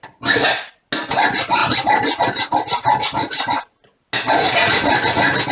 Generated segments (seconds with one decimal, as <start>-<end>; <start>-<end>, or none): none